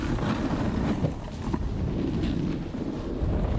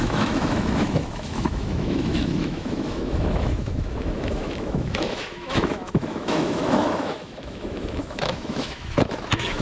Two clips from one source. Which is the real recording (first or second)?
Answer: first